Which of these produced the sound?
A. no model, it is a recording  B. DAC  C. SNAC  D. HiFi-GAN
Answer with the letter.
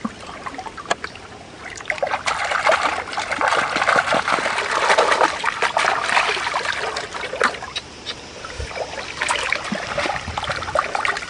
A